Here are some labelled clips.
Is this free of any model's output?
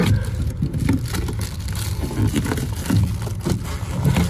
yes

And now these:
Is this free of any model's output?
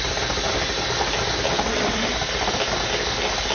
yes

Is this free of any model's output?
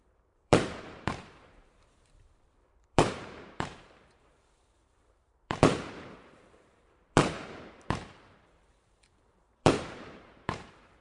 no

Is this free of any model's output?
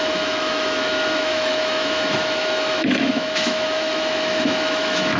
no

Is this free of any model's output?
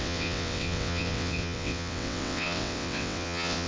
no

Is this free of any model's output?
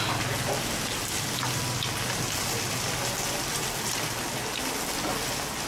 yes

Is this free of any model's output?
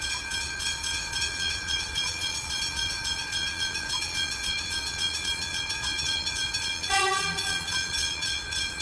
no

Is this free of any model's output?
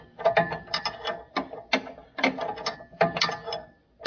yes